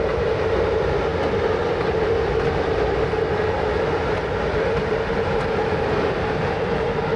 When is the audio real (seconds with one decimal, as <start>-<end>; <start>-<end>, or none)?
1.1-4.7